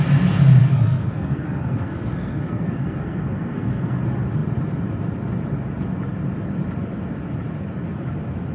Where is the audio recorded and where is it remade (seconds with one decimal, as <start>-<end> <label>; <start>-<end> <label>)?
0.0-0.6 recorded; 0.6-4.0 remade; 4.0-8.5 recorded